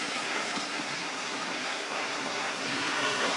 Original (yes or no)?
no